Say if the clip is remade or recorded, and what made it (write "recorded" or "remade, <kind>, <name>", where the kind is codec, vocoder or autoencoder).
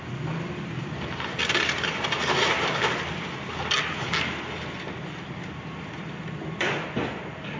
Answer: recorded